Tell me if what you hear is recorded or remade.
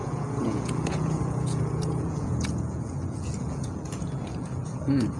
remade